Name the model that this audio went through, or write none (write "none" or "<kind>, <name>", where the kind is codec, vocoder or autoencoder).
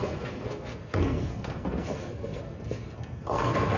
codec, SNAC